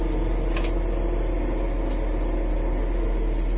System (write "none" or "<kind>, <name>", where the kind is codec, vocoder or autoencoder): none